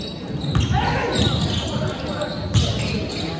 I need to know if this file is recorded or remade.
recorded